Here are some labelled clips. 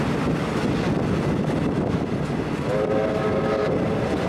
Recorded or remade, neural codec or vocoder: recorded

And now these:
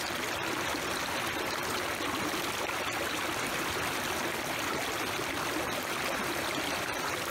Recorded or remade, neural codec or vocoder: recorded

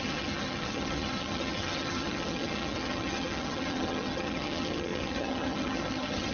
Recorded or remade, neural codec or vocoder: remade, vocoder, HiFi-GAN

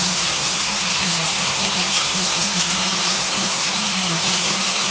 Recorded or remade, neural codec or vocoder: remade, codec, SNAC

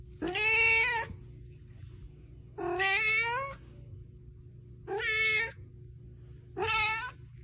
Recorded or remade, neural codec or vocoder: recorded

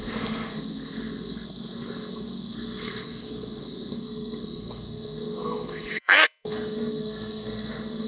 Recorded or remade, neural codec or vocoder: remade, codec, SNAC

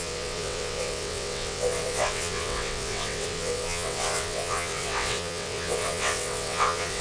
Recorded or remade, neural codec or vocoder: remade, vocoder, WaveNeXt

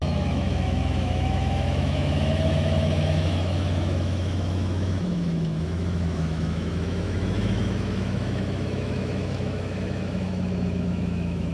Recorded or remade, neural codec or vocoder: remade, autoencoder, DAC-VAE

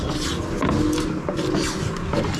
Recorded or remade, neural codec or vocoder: recorded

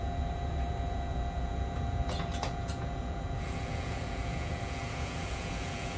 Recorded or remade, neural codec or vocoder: remade, vocoder, Vocos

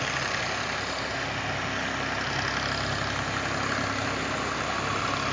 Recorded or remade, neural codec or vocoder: recorded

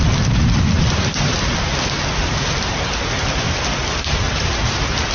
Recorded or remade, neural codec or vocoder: remade, vocoder, BigVGAN v2